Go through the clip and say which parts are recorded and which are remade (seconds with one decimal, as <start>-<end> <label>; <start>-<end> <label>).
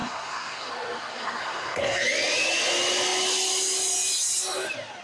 0.0-0.7 remade; 0.7-1.1 recorded; 1.1-2.0 remade; 2.0-5.0 recorded